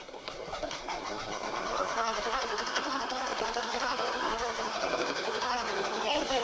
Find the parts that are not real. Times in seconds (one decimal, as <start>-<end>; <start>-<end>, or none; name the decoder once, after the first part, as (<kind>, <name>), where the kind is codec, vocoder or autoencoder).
0.0-6.4 (codec, SNAC)